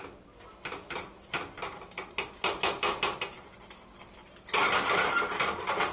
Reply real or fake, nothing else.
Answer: real